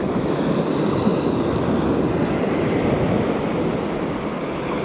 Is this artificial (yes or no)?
no